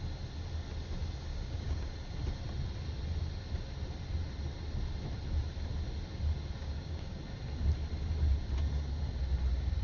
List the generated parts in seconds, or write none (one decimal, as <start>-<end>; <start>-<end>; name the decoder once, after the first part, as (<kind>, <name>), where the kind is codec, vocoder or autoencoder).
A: 1.3-1.9 (codec, DAC); 6.6-7.2